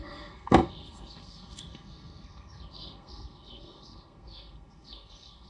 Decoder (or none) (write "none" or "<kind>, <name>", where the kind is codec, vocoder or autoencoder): codec, SNAC